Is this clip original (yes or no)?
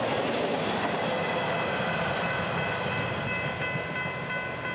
yes